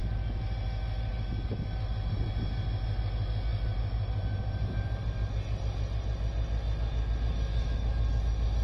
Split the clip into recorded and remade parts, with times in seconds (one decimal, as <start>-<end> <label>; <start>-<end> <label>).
0.0-7.5 recorded; 7.5-8.2 remade; 8.2-8.6 recorded